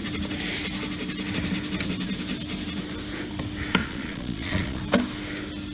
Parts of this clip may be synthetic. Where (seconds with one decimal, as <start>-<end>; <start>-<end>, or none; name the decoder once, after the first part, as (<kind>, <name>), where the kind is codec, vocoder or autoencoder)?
3.8-4.8 (vocoder, Vocos)